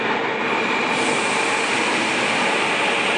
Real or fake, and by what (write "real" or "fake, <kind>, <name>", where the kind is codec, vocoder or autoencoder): fake, vocoder, BigVGAN v2